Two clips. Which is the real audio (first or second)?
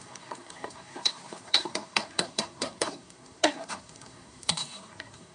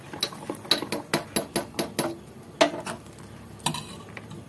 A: second